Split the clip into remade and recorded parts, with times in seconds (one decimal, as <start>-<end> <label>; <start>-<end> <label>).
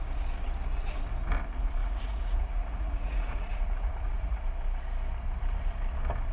0.0-1.8 recorded; 1.8-4.4 remade; 4.4-6.3 recorded